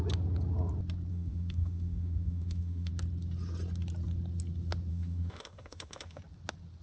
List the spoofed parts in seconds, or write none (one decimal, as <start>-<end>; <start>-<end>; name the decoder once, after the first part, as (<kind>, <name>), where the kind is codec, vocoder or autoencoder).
1.1-2.9 (autoencoder, DAC-VAE); 4.9-6.2